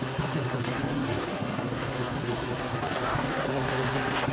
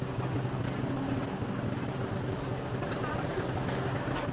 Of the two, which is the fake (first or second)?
first